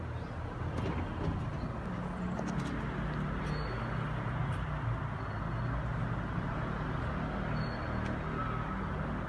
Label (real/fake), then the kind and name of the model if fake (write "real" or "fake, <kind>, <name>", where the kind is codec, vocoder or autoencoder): real